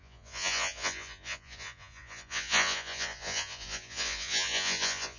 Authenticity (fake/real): fake